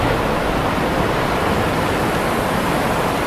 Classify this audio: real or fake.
real